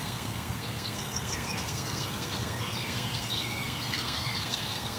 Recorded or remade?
remade